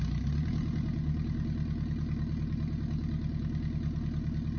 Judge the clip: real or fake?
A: real